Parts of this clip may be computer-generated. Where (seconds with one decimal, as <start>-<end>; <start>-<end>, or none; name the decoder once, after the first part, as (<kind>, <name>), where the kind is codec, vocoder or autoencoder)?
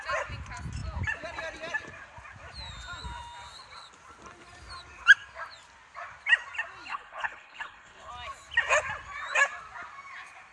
6.9-8.1 (codec, HILCodec)